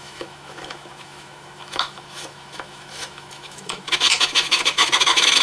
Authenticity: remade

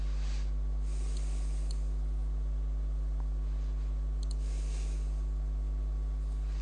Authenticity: recorded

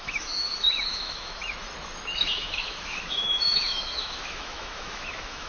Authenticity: remade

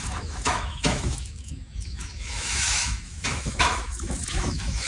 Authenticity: remade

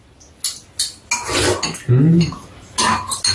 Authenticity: recorded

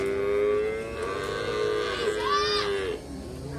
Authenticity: recorded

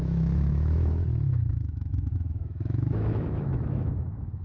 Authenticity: remade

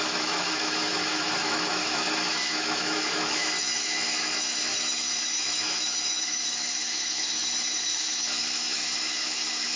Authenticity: remade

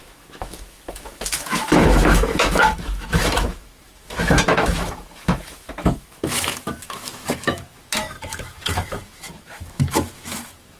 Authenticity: remade